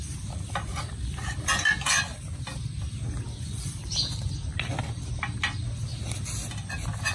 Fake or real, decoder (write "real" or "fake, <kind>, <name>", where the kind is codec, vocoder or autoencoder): real